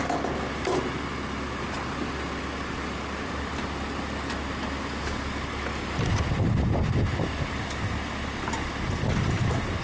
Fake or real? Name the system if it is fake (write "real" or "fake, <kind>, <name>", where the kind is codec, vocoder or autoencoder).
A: real